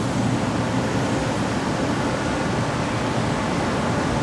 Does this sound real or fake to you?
real